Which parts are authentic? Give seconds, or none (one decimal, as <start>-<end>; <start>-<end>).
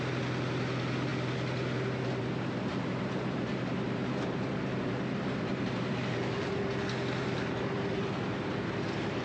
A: 0.0-2.7; 6.6-7.2; 8.5-9.2